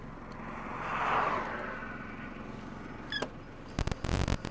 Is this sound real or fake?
real